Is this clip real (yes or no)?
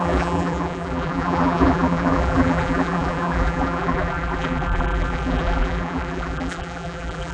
no